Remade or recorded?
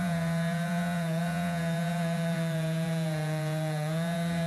remade